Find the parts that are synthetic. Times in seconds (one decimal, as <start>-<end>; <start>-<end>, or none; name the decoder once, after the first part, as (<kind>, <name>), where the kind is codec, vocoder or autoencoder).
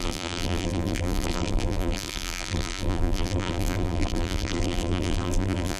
0.0-5.8 (vocoder, BigVGAN v2)